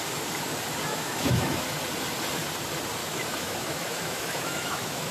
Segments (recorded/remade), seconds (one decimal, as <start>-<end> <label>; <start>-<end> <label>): 0.0-0.9 recorded; 0.9-1.6 remade; 1.6-3.0 recorded; 3.0-5.1 remade